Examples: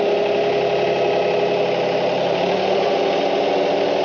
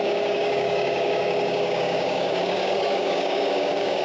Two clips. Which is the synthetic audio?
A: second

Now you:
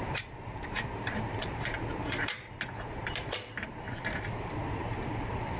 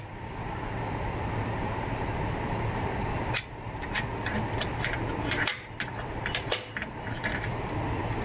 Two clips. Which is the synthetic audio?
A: first